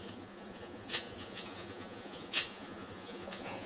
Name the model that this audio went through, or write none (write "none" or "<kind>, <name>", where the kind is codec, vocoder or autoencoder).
vocoder, Vocos